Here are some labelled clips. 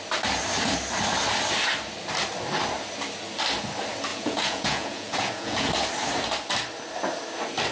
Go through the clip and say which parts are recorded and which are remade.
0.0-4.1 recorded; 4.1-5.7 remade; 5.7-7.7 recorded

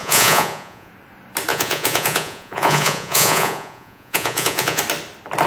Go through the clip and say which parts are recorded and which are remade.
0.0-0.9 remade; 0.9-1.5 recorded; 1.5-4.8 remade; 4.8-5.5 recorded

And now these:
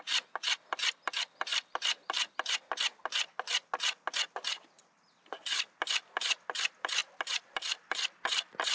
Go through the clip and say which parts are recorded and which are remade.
0.0-1.5 recorded; 1.5-2.3 remade; 2.3-7.0 recorded; 7.0-7.8 remade; 7.8-8.7 recorded

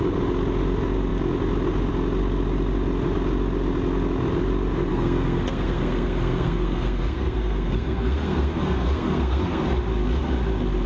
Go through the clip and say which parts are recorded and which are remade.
0.0-4.9 recorded; 4.9-9.6 remade; 9.6-10.9 recorded